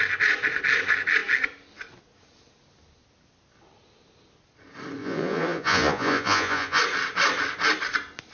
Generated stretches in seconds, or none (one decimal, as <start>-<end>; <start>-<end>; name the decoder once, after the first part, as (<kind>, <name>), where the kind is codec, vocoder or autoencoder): 5.0-6.8 (vocoder, Vocos)